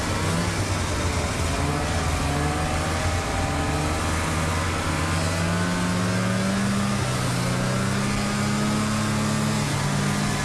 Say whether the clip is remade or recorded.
recorded